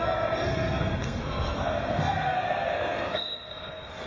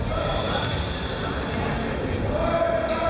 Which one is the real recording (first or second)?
second